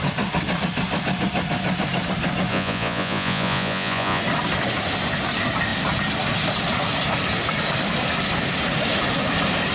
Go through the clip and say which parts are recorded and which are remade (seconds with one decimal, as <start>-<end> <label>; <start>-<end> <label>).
0.0-2.5 recorded; 2.5-4.2 remade; 4.2-9.7 recorded